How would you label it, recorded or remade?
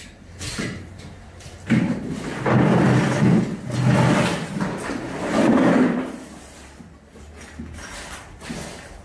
recorded